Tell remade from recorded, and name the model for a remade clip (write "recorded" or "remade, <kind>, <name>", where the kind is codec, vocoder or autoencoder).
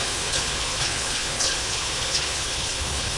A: remade, codec, HILCodec